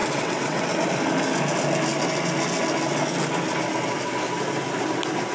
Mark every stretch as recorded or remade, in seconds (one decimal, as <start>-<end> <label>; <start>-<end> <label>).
0.0-0.6 remade; 0.6-5.3 recorded